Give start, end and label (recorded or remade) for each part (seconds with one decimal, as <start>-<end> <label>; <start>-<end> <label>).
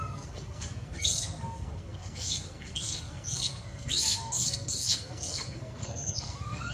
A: 0.0-6.7 remade